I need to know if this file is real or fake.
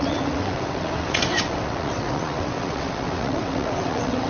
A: fake